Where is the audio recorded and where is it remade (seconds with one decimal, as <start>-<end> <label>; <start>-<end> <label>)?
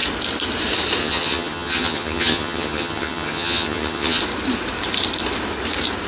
0.0-1.0 recorded; 1.0-4.2 remade; 4.2-6.1 recorded